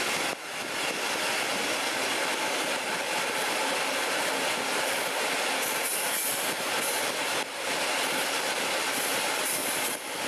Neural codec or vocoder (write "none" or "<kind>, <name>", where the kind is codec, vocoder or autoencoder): none